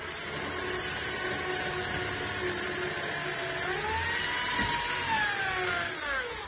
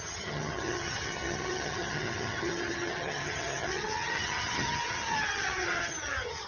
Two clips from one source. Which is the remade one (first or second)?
second